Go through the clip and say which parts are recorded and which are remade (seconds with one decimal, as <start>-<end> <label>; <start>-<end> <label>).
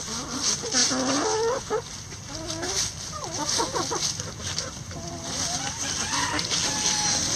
0.0-7.4 recorded